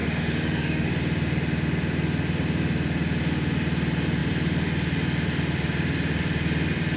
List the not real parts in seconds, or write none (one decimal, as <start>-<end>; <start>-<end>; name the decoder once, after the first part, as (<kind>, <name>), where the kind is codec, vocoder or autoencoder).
0.0-0.9 (autoencoder, DAC-VAE)